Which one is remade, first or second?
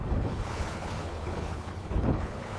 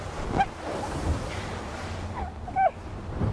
first